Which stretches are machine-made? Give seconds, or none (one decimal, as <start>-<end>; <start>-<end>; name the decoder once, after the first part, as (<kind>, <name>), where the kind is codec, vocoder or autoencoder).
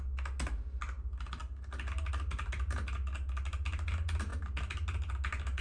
none